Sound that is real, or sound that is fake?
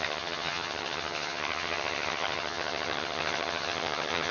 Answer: fake